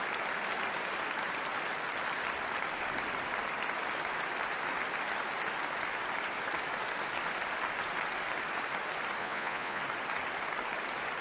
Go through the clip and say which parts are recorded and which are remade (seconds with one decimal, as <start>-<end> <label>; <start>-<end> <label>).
0.0-9.2 recorded; 9.2-9.8 remade; 9.8-11.2 recorded